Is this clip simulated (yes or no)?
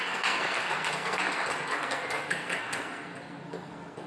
yes